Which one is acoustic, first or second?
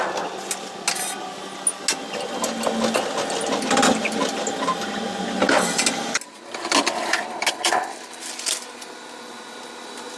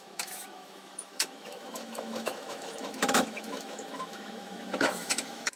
first